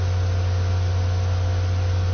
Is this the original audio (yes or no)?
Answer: yes